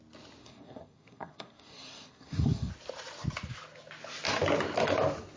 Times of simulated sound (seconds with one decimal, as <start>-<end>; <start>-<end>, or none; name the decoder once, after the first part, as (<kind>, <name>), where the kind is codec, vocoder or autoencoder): 0.4-2.7 (codec, SNAC)